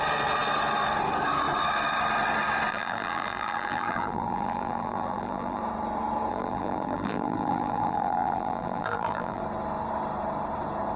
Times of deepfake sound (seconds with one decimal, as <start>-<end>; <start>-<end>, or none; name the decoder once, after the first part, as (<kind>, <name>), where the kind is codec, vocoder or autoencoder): 2.7-5.6 (vocoder, BigVGAN v2); 6.3-9.4